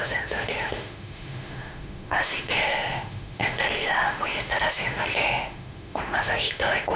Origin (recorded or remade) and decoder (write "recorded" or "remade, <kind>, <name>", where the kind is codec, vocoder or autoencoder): remade, autoencoder, DAC-VAE